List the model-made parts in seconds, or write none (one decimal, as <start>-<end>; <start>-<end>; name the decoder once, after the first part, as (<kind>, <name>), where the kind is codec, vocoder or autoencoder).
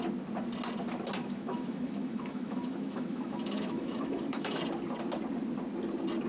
1.2-4.6 (autoencoder, DAC-VAE)